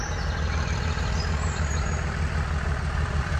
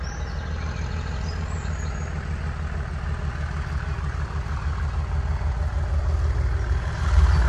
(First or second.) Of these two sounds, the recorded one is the second